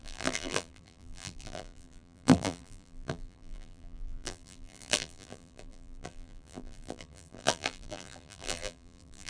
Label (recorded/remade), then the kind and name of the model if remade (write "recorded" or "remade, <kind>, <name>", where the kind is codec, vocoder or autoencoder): remade, vocoder, BigVGAN v2